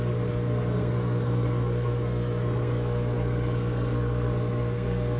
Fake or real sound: fake